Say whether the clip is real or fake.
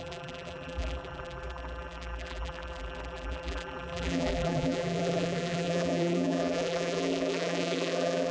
fake